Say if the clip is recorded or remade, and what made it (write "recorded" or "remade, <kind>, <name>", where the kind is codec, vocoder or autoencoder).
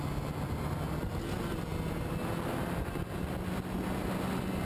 recorded